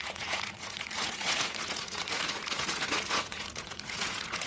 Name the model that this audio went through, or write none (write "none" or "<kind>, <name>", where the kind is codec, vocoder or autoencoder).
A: vocoder, Vocos